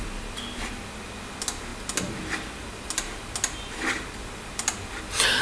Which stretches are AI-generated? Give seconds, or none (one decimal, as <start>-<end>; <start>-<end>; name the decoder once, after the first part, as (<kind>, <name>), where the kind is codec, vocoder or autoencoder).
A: none